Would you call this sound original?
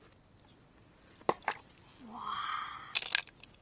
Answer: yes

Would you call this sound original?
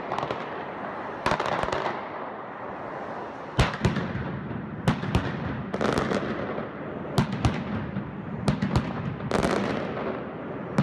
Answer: yes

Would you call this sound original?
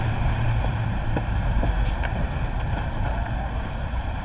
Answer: no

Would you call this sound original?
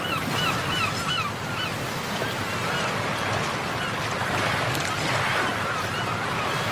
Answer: yes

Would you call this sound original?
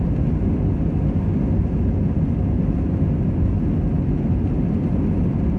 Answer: yes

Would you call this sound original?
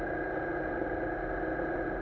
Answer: yes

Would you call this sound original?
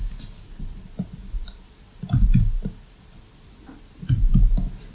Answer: yes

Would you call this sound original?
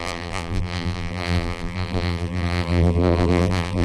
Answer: no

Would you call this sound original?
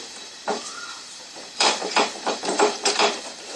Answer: no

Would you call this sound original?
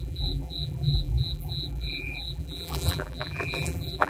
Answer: no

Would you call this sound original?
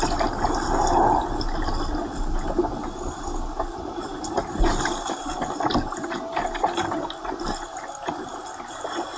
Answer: yes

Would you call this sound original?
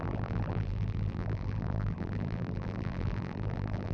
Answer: no